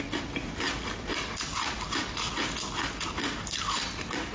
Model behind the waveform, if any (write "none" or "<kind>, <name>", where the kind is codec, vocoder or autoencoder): none